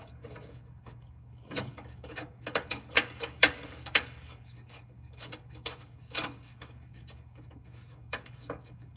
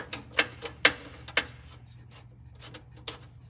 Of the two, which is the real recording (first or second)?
second